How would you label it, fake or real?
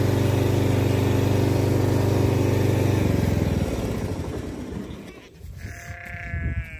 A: real